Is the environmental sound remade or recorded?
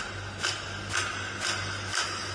recorded